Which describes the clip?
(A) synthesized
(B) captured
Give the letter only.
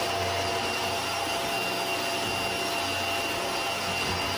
B